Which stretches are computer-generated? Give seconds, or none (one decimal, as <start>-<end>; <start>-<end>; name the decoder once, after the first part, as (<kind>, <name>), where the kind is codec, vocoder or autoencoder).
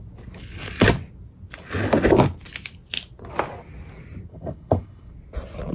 4.3-5.1 (codec, HILCodec)